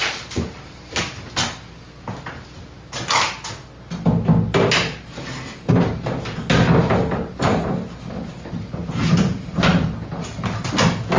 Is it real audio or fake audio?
real